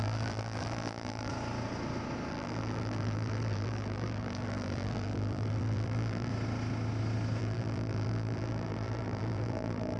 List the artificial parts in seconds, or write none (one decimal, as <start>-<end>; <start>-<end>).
0.0-1.3; 2.3-6.3; 7.4-10.0